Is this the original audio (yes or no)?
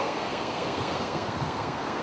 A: no